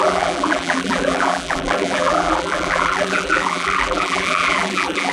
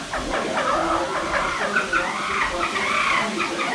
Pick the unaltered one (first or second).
second